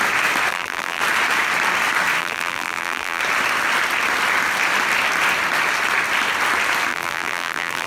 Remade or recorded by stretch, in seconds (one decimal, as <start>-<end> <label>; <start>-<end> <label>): 0.0-0.5 recorded; 0.5-1.0 remade; 1.0-2.2 recorded; 2.2-3.2 remade; 3.2-6.9 recorded; 6.9-7.9 remade